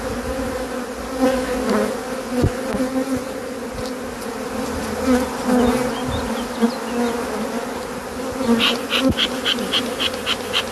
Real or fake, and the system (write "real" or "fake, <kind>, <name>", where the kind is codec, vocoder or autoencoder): real